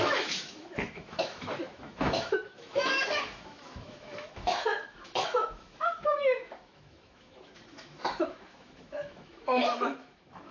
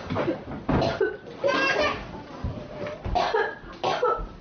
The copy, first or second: first